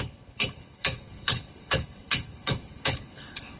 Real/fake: fake